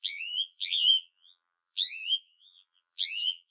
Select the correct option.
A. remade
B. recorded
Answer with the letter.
A